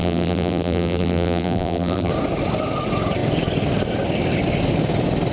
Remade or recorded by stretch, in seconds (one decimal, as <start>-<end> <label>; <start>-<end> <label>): 0.0-2.1 remade; 2.1-5.3 recorded